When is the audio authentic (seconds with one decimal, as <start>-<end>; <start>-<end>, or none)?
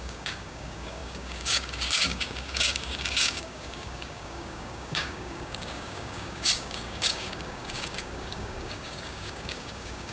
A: none